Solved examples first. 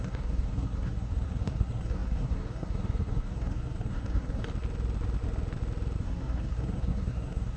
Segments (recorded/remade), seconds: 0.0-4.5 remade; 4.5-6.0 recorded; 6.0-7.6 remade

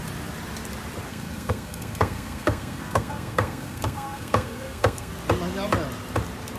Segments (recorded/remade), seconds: 0.0-1.1 recorded; 1.1-5.1 remade; 5.1-6.6 recorded

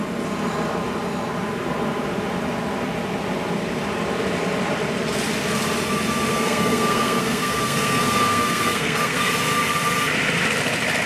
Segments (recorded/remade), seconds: 0.0-6.3 recorded; 6.3-9.3 remade; 9.3-11.1 recorded

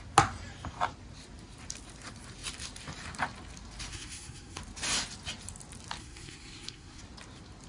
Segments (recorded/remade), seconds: 0.0-3.9 recorded; 3.9-4.6 remade; 4.6-6.0 recorded; 6.0-7.0 remade; 7.0-7.7 recorded

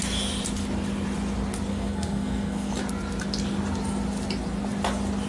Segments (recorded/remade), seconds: 0.0-1.7 recorded; 1.7-2.7 remade; 2.7-5.3 recorded

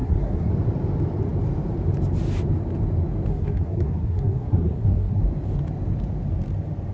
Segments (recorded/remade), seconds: 0.0-0.5 remade; 0.5-3.3 recorded; 3.3-5.2 remade; 5.2-6.9 recorded

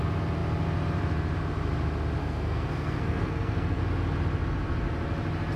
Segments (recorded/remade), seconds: 0.0-2.2 recorded; 2.2-3.8 remade; 3.8-5.6 recorded